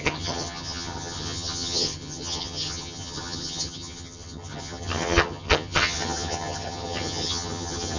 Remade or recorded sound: remade